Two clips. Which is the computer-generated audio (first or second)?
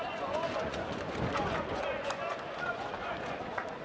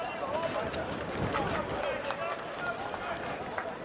first